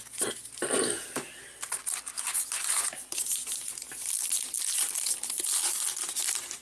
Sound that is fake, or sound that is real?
real